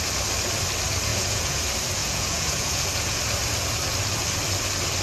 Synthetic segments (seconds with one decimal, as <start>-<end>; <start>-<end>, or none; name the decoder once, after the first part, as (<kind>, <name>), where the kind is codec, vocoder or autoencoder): 1.1-1.6 (vocoder, Vocos); 2.0-3.2